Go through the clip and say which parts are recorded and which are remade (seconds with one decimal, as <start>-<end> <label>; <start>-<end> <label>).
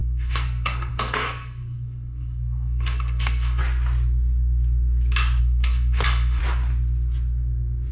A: 0.0-3.6 remade; 3.6-5.4 recorded; 5.4-6.4 remade; 6.4-7.9 recorded